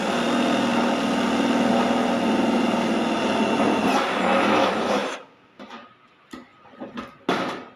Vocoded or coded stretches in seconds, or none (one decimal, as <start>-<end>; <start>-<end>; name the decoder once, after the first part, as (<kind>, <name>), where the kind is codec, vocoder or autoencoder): 5.0-6.1 (vocoder, BigVGAN v2)